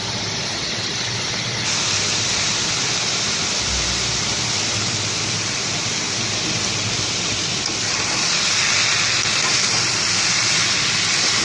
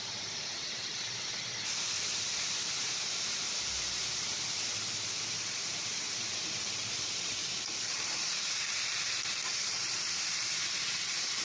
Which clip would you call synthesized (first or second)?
second